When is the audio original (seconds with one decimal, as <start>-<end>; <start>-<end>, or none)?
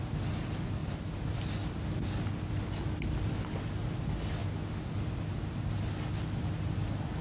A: 0.0-7.2